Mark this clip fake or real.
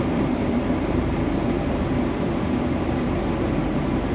fake